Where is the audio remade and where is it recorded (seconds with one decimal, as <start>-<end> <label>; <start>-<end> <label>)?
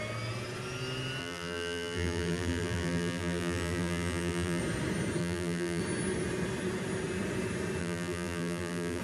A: 0.0-1.2 recorded; 1.2-4.6 remade; 4.6-5.2 recorded; 5.2-5.8 remade; 5.8-7.8 recorded; 7.8-9.0 remade